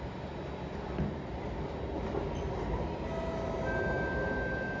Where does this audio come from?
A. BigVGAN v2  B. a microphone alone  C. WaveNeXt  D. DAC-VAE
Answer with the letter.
B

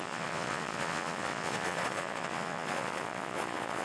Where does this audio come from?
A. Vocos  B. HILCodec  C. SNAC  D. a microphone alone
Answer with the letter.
A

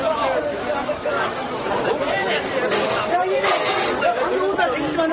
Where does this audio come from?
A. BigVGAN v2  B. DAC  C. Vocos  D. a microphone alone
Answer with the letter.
D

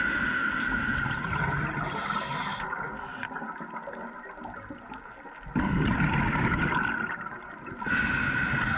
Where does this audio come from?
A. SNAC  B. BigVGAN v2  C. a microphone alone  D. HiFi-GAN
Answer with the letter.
C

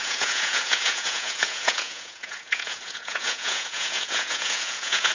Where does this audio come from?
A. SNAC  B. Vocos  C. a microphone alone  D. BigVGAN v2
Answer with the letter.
B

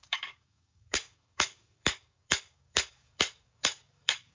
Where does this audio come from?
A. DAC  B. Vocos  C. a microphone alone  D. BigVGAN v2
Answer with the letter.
A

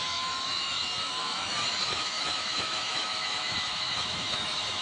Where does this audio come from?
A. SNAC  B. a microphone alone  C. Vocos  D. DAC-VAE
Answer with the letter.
D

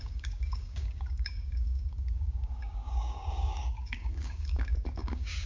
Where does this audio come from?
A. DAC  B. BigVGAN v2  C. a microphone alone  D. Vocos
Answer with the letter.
A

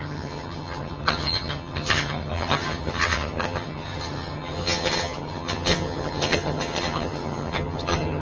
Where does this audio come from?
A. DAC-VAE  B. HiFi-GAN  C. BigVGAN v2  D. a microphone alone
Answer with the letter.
B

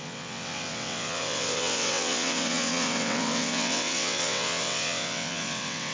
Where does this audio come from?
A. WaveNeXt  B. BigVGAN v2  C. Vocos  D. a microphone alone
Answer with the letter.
A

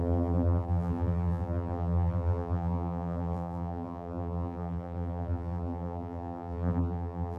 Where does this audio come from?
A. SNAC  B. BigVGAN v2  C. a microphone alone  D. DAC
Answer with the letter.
B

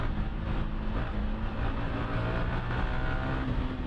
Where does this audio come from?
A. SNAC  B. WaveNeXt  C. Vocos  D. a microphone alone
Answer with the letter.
D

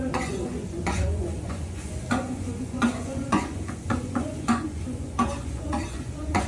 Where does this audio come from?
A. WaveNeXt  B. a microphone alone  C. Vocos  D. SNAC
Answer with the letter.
C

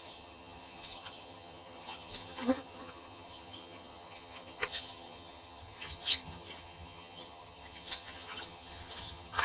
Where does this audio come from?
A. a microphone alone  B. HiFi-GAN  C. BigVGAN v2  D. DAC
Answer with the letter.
B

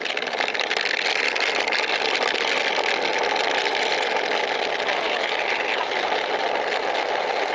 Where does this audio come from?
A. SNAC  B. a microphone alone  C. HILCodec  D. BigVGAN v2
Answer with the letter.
B